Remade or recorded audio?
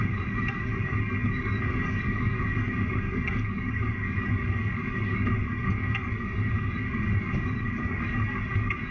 remade